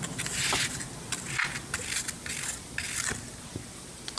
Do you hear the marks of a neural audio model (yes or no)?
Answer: no